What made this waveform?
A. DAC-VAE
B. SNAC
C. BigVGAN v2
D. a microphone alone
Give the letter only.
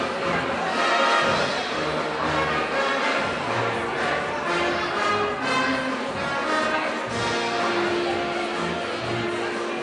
D